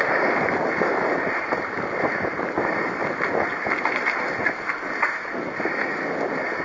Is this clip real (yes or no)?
yes